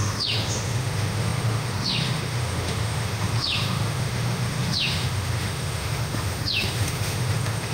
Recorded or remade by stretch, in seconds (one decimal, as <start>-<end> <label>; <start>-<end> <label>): 0.0-7.7 remade